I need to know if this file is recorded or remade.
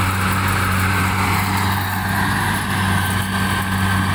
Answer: recorded